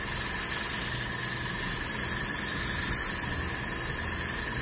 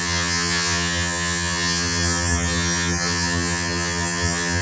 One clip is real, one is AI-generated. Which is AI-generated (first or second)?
second